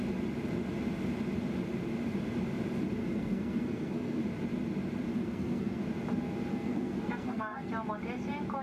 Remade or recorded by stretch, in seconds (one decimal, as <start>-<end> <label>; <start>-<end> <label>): 0.0-3.0 recorded; 3.0-4.2 remade; 4.2-5.1 recorded; 5.1-5.8 remade; 5.8-6.5 recorded; 6.5-7.7 remade; 7.7-8.6 recorded